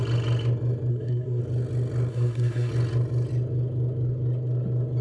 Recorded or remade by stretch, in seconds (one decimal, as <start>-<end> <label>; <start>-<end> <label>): 0.0-0.9 recorded; 0.9-1.4 remade; 1.4-2.1 recorded; 2.1-2.7 remade; 2.7-5.0 recorded